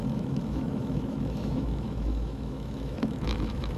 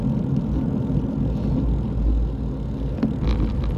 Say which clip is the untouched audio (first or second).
second